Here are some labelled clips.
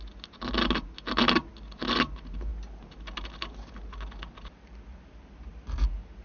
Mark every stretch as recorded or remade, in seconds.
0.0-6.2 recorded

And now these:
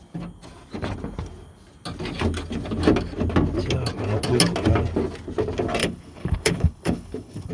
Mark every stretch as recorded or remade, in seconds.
0.0-5.8 recorded; 5.8-7.5 remade

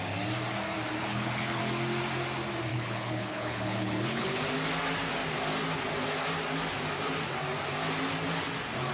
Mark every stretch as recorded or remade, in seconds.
0.0-1.0 recorded; 1.0-1.6 remade; 1.6-2.7 recorded; 2.7-4.4 remade; 4.4-8.9 recorded

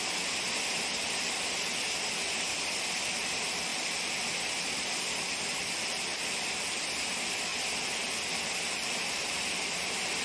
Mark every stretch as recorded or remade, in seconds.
0.0-10.2 recorded

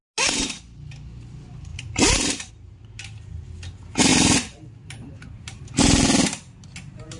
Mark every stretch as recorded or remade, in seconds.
0.0-1.7 recorded; 1.7-2.5 remade; 2.5-4.1 recorded; 4.1-5.3 remade; 5.3-7.2 recorded